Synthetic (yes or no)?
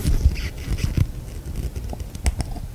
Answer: no